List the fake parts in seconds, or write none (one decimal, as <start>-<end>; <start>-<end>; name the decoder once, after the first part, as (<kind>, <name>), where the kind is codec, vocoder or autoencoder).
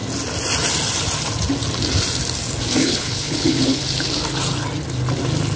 2.8-3.8 (codec, HILCodec)